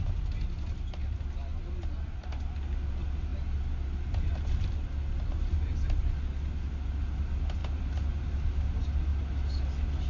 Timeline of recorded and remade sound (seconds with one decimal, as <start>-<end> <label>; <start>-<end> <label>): 0.0-10.1 recorded